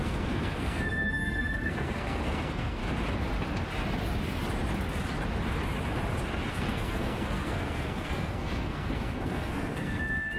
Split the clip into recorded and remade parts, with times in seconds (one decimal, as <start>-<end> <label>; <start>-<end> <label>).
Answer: 0.0-2.8 remade; 2.8-6.5 recorded; 6.5-10.4 remade